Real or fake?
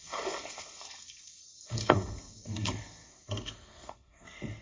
fake